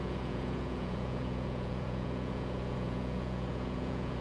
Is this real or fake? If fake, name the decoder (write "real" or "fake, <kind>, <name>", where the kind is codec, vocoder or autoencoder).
fake, vocoder, Vocos